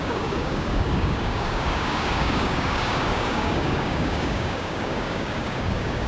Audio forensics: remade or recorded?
remade